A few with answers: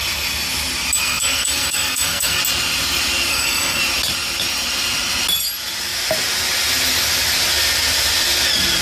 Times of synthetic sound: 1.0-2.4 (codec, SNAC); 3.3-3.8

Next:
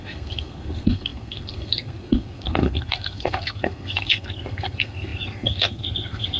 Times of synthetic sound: 0.0-6.4 (codec, SNAC)